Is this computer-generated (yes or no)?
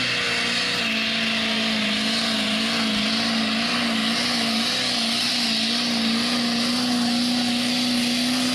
no